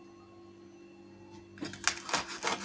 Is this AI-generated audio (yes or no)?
no